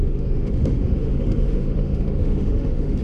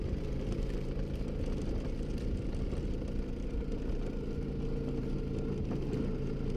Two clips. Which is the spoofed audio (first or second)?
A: first